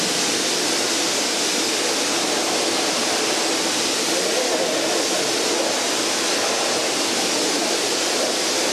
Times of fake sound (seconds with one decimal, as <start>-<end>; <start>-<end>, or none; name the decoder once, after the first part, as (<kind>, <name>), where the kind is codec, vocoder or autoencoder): 6.8-7.9 (vocoder, BigVGAN v2)